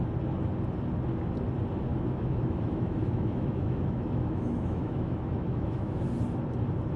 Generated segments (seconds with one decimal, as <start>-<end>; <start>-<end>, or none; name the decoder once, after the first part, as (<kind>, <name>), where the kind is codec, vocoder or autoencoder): 1.9-6.1 (autoencoder, DAC-VAE)